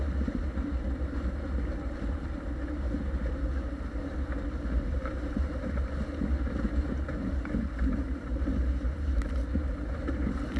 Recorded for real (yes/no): no